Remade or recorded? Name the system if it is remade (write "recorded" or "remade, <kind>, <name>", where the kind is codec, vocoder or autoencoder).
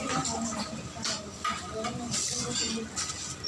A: remade, vocoder, BigVGAN v2